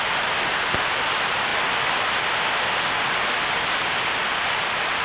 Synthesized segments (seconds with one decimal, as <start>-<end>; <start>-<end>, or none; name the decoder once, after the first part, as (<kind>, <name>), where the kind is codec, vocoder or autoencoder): none